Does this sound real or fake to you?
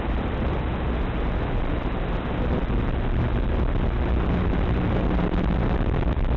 real